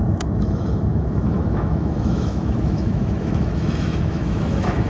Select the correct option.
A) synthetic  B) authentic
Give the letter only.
A